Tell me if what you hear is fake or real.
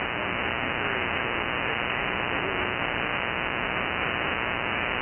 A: real